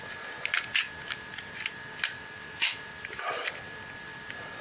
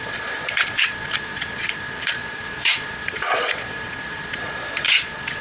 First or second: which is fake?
second